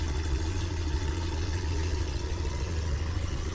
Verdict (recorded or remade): remade